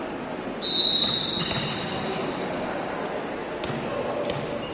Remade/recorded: recorded